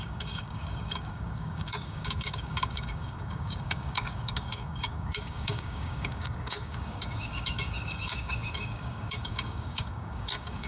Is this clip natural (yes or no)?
no